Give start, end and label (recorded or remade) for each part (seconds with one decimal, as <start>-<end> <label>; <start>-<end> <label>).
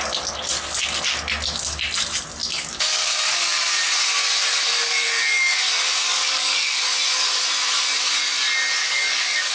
0.0-2.4 recorded; 2.4-3.6 remade; 3.6-4.7 recorded; 4.7-5.6 remade; 5.6-6.0 recorded; 6.0-6.8 remade; 6.8-8.8 recorded; 8.8-9.5 remade